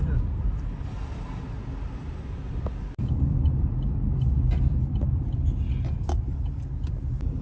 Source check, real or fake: real